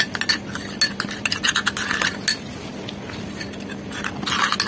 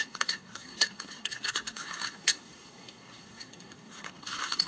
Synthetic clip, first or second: second